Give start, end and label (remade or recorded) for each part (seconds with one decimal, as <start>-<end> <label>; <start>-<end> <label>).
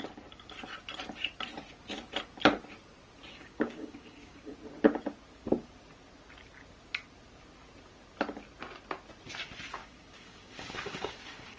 0.0-3.3 recorded; 3.3-4.5 remade; 4.5-9.8 recorded; 9.8-11.6 remade